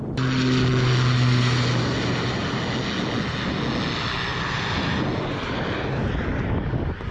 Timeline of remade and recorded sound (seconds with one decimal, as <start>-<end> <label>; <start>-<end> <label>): 0.0-7.1 recorded